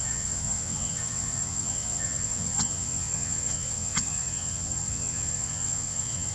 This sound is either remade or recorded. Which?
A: remade